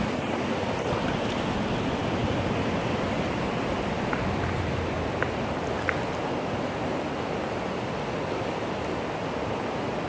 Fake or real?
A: real